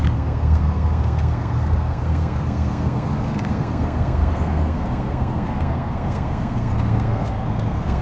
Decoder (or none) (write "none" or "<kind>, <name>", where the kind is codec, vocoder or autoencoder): codec, SNAC